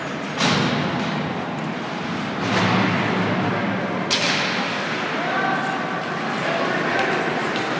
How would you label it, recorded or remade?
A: recorded